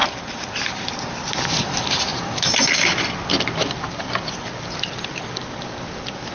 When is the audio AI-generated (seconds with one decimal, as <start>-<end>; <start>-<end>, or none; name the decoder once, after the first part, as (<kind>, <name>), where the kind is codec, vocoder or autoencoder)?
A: 0.0-1.3 (vocoder, BigVGAN v2); 2.1-2.7; 3.6-4.1